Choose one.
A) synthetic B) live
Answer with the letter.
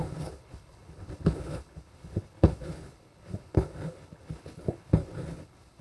A